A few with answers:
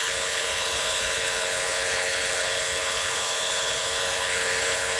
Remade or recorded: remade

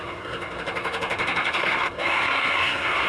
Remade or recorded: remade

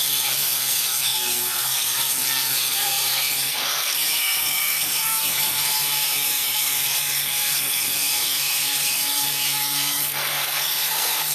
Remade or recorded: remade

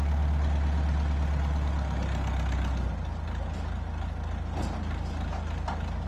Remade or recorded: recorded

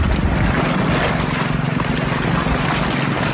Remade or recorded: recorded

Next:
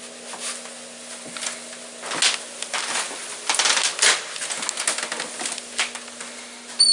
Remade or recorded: recorded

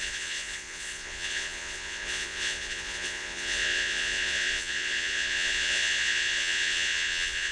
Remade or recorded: remade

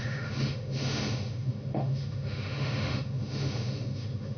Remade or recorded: remade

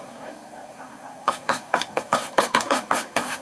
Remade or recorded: remade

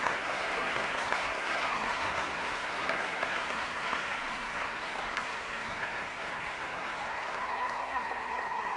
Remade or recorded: remade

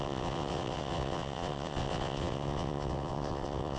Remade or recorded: remade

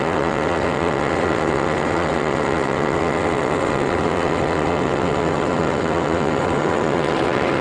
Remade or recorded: remade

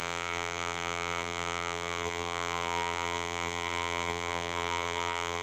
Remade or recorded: remade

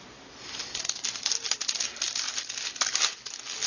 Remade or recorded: recorded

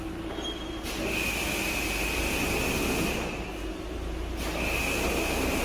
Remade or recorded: recorded